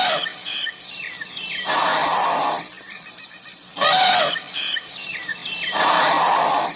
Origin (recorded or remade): remade